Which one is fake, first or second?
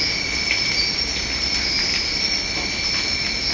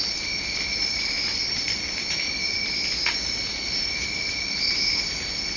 second